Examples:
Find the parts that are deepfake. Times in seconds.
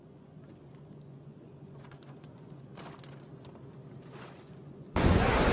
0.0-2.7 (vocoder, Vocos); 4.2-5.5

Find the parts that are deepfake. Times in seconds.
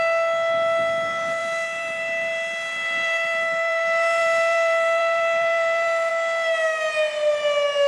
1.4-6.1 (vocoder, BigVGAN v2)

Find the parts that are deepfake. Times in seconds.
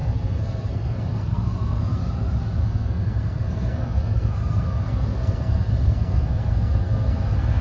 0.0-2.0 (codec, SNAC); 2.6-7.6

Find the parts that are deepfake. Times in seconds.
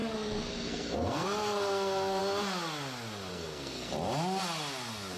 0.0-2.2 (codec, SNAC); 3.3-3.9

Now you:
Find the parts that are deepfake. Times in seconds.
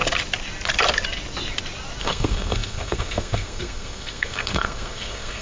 2.0-5.4 (codec, SNAC)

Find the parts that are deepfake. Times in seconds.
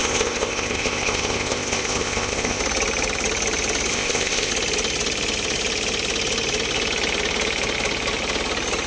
0.0-2.6 (codec, ZipCodec); 3.9-4.5